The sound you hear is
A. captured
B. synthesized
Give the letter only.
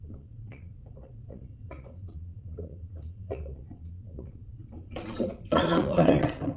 B